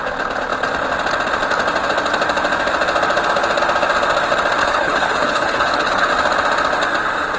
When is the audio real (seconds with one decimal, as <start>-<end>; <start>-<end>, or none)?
0.0-4.6; 6.1-7.4